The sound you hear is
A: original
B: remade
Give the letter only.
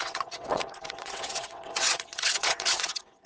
B